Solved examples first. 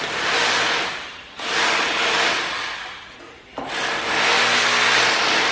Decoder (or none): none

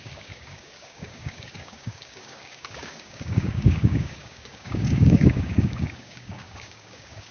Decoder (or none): codec, DAC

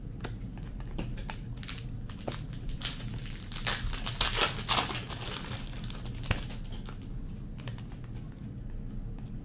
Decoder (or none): none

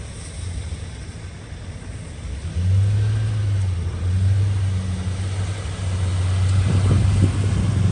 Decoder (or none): none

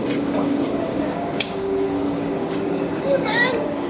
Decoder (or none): codec, DAC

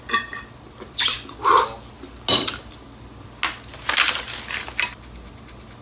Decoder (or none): none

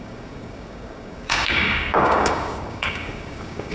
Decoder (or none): codec, DAC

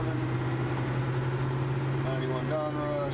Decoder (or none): none